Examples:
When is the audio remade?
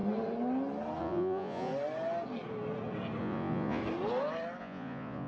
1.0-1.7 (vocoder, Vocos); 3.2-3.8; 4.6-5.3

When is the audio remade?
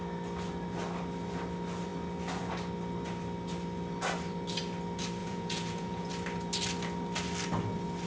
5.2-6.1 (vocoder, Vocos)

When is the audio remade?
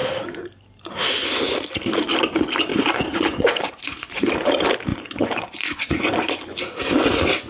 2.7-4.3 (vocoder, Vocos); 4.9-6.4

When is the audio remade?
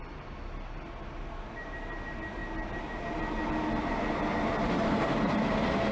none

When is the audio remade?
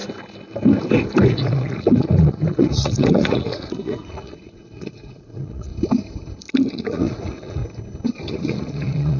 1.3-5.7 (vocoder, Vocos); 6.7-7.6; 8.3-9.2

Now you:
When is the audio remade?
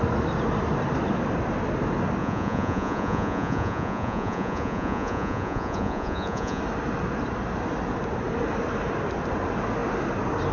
2.2-6.6 (vocoder, Vocos)